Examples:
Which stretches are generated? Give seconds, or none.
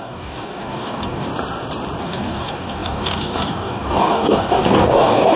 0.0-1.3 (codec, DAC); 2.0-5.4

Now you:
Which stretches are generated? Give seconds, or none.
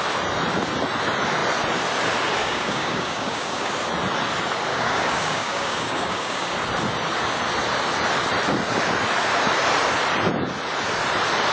2.4-3.7 (codec, DAC); 4.7-6.5